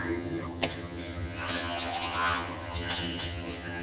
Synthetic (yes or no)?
yes